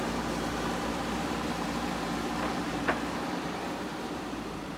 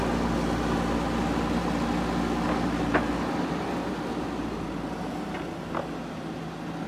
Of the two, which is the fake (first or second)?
first